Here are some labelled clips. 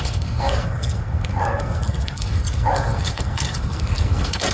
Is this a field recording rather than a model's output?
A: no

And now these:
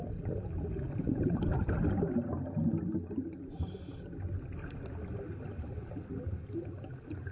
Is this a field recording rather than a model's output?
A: yes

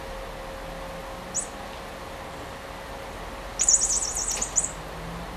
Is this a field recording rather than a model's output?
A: yes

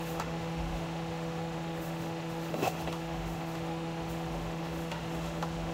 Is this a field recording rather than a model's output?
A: no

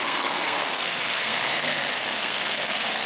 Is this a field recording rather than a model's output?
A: no